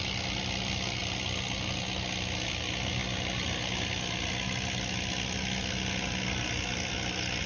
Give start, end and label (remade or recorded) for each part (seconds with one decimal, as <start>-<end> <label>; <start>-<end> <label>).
0.0-7.5 recorded